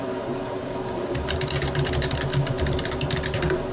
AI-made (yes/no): no